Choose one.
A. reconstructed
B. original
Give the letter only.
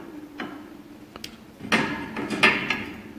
B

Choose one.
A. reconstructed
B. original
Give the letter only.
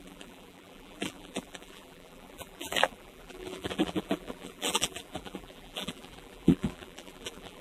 A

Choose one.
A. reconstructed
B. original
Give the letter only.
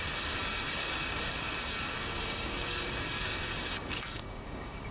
A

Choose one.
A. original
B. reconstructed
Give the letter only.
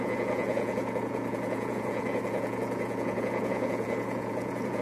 B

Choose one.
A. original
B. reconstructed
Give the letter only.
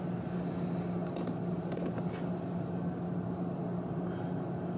A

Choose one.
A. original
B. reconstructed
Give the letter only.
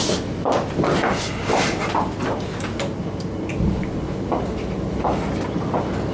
A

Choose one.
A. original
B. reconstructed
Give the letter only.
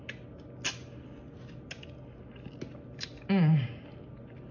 A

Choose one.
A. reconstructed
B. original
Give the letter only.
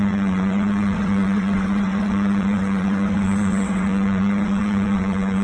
A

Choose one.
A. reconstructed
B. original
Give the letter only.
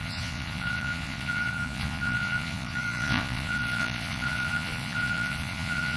A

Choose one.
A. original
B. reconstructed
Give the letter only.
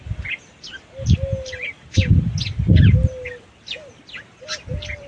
A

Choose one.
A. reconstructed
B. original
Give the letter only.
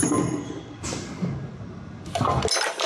B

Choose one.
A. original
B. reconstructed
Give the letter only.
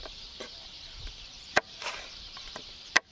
B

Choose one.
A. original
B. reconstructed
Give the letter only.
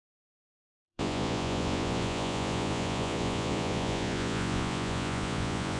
B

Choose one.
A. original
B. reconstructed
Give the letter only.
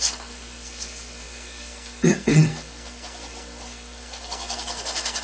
B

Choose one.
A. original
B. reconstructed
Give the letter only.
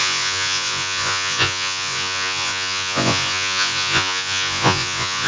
B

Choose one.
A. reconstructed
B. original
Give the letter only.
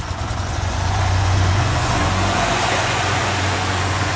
A